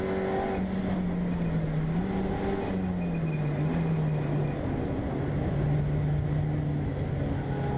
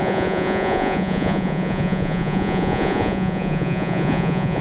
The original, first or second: first